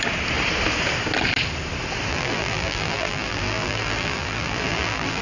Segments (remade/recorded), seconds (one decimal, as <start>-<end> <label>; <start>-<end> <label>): 0.0-2.1 recorded; 2.1-5.2 remade